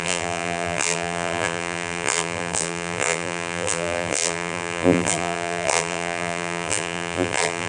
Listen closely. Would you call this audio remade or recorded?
remade